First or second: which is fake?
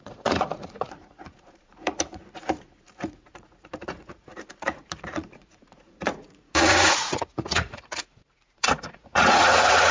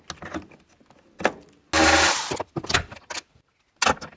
first